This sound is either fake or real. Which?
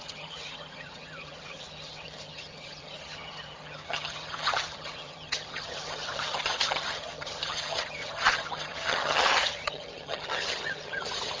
fake